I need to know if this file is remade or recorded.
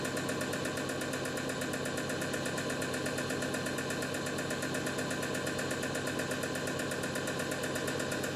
recorded